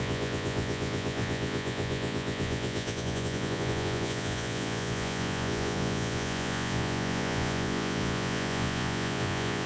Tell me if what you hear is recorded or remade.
remade